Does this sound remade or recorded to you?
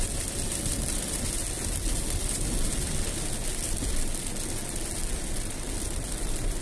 recorded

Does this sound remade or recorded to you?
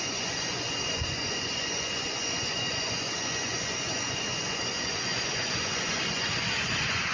remade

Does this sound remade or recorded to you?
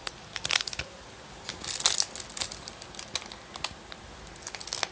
recorded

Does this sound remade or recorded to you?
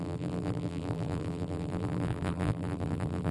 remade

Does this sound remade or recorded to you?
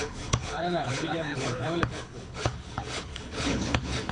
remade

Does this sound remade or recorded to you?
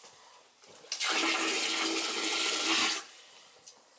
recorded